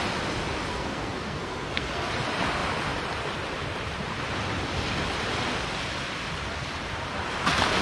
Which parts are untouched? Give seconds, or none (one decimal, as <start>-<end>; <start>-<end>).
0.0-0.7; 2.1-7.8